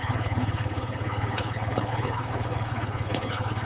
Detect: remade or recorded remade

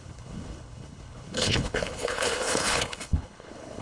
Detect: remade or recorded remade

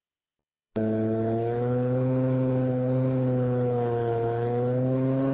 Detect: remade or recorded remade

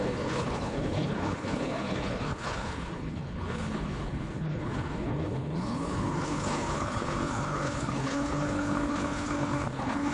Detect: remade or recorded remade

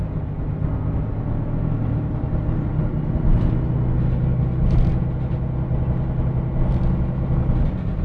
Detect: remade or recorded recorded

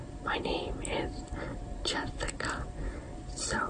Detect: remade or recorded recorded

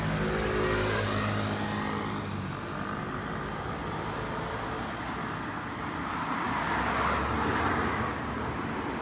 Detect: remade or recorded recorded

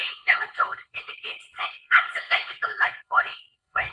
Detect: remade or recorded remade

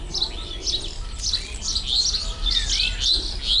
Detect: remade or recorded recorded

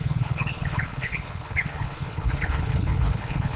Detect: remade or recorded remade